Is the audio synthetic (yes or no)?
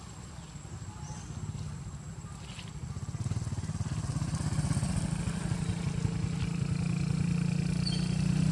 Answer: no